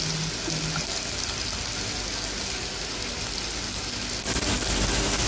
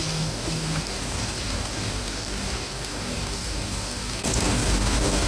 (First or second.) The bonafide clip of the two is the first